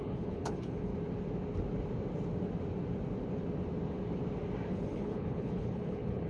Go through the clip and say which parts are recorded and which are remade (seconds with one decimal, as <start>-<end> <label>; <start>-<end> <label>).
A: 0.0-0.9 remade; 0.9-4.7 recorded; 4.7-6.3 remade